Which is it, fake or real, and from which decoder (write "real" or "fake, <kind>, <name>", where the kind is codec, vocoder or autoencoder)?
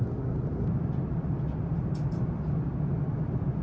real